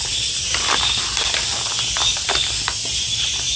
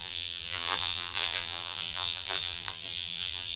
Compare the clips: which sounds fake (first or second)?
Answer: second